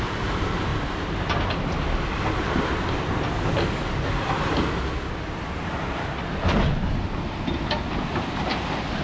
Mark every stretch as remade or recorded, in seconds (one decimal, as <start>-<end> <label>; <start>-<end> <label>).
0.0-9.0 recorded